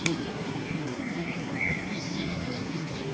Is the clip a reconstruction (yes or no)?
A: yes